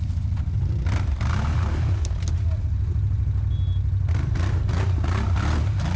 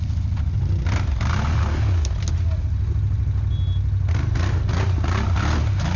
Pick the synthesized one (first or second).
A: first